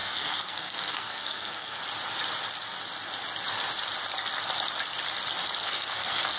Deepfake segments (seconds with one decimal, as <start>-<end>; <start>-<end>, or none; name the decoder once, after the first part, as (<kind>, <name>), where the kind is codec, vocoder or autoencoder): 0.0-1.8 (codec, SNAC); 5.6-6.4